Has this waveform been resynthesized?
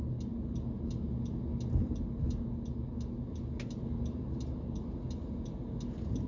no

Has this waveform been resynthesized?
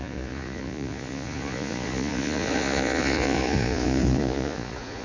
yes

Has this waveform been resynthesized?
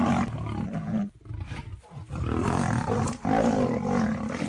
no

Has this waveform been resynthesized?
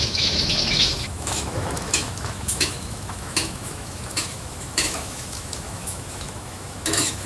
yes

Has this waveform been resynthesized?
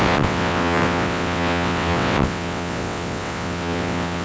yes